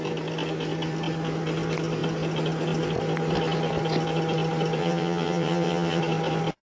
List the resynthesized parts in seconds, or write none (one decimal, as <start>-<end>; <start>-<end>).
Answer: 4.8-6.0